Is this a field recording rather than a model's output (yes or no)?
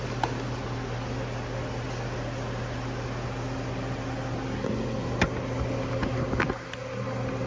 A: yes